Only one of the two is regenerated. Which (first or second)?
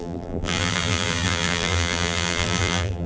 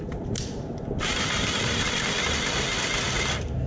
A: first